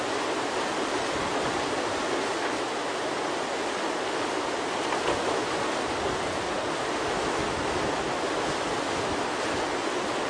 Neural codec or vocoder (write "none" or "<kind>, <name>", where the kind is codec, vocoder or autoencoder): none